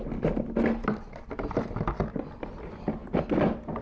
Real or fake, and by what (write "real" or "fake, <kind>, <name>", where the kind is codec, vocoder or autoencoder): real